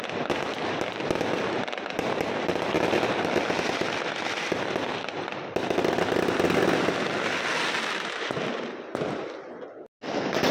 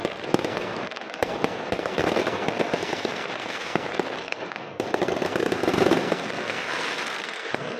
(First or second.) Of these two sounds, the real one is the first